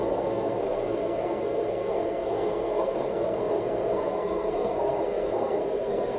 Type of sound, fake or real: fake